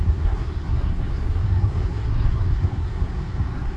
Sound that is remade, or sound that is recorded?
remade